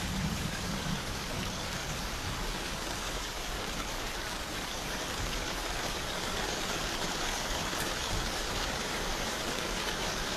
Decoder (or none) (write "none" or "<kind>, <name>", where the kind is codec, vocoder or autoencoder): codec, DAC